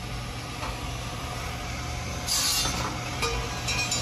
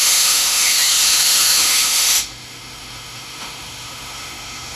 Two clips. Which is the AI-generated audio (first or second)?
second